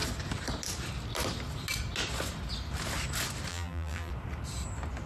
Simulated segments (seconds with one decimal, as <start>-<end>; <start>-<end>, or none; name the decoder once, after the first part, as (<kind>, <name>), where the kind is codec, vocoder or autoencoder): 3.5-4.1 (vocoder, BigVGAN v2)